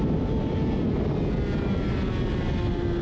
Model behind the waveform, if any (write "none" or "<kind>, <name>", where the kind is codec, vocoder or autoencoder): none